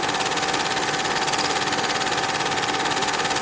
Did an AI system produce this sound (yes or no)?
no